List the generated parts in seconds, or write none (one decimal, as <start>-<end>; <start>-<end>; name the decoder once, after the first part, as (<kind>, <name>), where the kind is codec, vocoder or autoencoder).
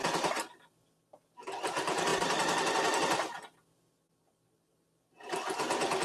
none